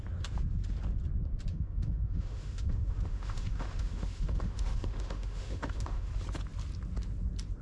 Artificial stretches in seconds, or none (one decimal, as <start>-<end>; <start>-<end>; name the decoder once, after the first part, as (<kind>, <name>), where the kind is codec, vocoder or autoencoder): 1.5-6.1 (autoencoder, DAC-VAE)